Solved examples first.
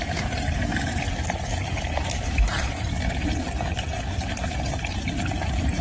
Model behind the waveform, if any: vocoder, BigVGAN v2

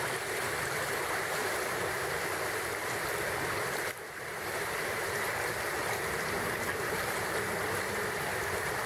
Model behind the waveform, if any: none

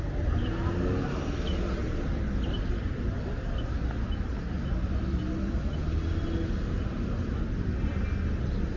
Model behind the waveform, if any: none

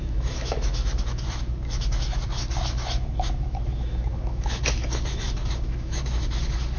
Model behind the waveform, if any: autoencoder, DAC-VAE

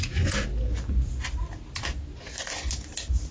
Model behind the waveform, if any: none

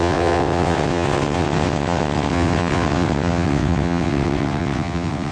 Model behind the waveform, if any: vocoder, WaveNeXt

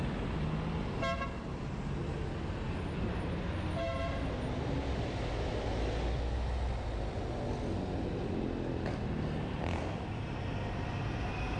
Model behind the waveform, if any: none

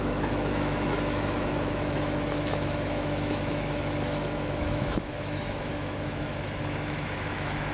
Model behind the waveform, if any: autoencoder, DAC-VAE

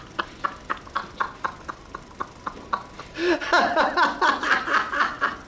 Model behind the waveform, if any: none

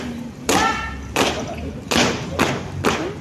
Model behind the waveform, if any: none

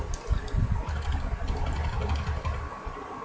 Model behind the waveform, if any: none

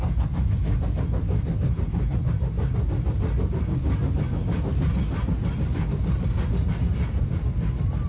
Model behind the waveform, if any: none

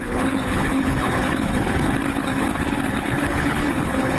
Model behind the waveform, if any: codec, HILCodec